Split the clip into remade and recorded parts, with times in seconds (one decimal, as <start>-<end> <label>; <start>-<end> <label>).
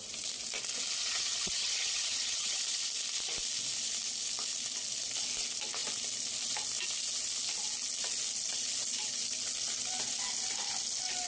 0.0-1.0 recorded; 1.0-2.6 remade; 2.6-11.3 recorded